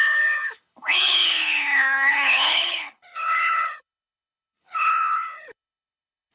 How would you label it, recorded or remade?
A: remade